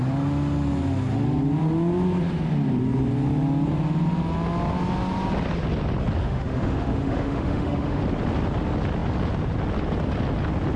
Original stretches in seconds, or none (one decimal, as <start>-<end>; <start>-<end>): 0.0-6.2; 8.0-10.8